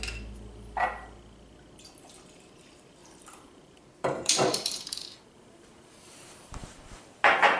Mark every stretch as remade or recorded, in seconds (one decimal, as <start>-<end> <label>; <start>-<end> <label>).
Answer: 0.0-3.0 recorded; 3.0-7.1 remade; 7.1-7.6 recorded